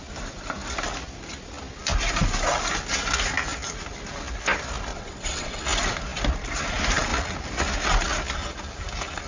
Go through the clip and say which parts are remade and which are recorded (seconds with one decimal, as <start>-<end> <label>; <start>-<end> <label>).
0.0-4.9 recorded; 4.9-5.6 remade; 5.6-9.3 recorded